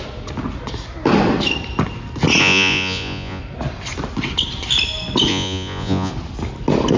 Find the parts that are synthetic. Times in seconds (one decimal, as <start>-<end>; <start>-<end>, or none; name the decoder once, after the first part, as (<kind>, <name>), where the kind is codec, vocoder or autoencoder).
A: 2.4-3.4 (vocoder, Vocos); 5.3-6.1